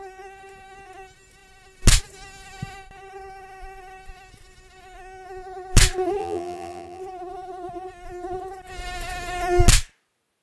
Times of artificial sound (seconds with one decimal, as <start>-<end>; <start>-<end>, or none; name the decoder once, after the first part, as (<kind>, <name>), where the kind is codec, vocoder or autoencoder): 6.2-7.0 (vocoder, BigVGAN v2)